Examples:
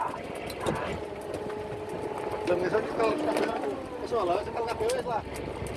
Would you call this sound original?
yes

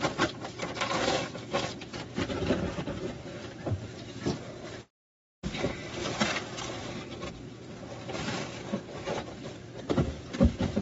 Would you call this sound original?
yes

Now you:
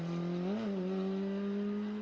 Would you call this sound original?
yes